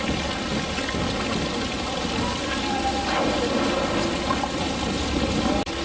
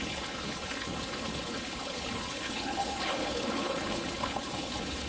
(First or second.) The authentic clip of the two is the first